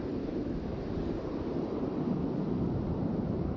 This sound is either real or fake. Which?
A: fake